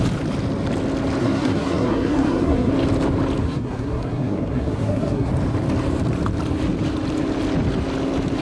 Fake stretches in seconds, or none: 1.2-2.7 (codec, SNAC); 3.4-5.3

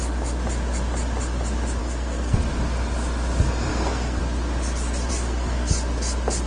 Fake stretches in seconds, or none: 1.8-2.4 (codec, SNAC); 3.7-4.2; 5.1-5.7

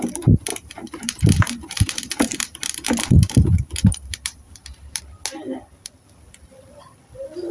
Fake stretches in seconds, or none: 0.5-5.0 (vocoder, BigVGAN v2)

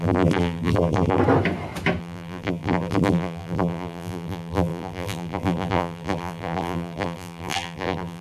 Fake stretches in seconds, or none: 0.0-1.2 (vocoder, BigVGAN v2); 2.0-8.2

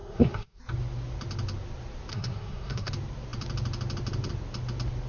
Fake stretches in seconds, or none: 0.0-0.6 (codec, SNAC); 2.1-2.9